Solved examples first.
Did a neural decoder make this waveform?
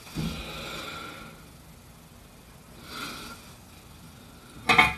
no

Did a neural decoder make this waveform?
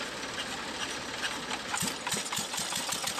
no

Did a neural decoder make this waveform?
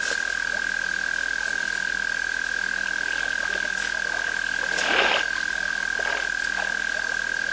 no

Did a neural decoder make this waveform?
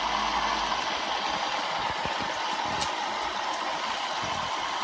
no